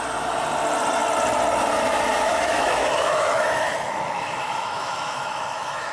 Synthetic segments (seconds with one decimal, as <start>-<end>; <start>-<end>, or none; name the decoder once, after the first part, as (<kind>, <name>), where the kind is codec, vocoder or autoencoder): 2.3-5.9 (autoencoder, DAC-VAE)